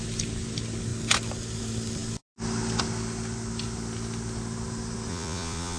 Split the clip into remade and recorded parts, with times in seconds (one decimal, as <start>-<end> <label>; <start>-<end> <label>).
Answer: 0.0-5.1 recorded; 5.1-5.8 remade